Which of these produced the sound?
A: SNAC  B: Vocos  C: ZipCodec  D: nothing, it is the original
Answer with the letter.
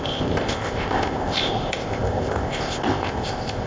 C